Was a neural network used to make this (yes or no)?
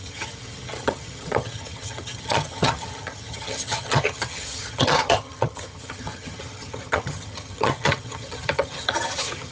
yes